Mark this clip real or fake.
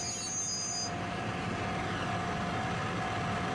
real